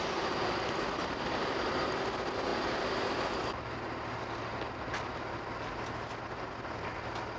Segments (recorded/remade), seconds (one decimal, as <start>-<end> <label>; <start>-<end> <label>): 0.0-7.4 recorded